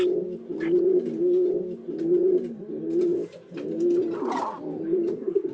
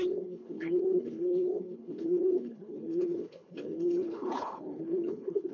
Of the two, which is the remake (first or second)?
second